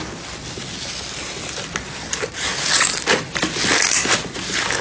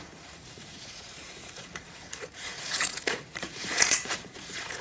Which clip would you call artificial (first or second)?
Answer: second